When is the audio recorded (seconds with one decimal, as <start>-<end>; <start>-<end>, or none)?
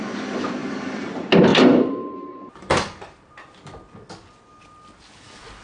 0.0-0.6; 1.1-1.5; 3.3-5.6